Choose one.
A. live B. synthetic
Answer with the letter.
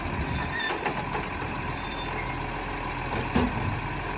A